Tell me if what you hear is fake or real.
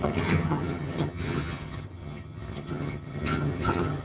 fake